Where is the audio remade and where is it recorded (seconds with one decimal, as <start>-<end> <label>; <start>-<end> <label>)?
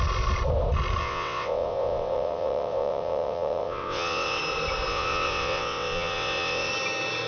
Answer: 0.0-1.0 recorded; 1.0-4.4 remade; 4.4-4.9 recorded; 4.9-6.7 remade; 6.7-7.3 recorded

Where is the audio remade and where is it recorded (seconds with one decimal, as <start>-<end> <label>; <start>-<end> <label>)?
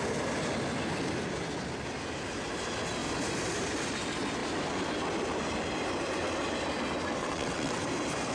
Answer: 0.0-7.2 recorded; 7.2-7.8 remade; 7.8-8.3 recorded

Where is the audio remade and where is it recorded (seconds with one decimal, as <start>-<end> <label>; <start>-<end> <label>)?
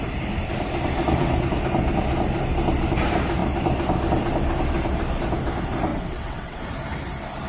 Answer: 0.0-5.9 recorded; 5.9-6.6 remade; 6.6-7.5 recorded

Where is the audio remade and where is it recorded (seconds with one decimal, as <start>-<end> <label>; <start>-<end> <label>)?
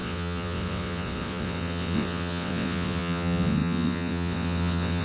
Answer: 0.0-5.0 remade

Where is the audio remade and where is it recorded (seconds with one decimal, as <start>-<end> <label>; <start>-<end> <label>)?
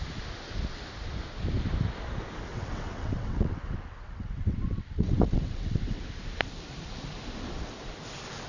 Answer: 0.0-2.5 recorded; 2.5-6.0 remade; 6.0-8.5 recorded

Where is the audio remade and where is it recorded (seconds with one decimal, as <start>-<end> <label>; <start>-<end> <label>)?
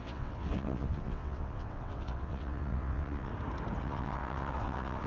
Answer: 0.0-3.3 remade; 3.3-3.8 recorded; 3.8-5.1 remade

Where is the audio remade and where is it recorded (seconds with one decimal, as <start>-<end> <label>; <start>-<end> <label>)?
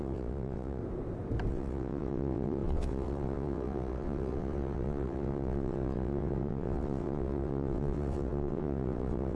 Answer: 0.0-0.8 remade; 0.8-1.5 recorded; 1.5-9.4 remade